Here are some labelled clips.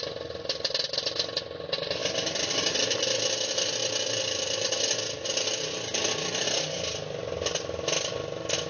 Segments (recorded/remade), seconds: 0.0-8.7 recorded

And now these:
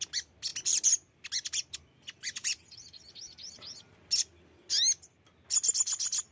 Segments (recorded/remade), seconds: 0.0-6.3 recorded